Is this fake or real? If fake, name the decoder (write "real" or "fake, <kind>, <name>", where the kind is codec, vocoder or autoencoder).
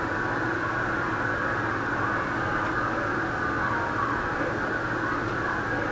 real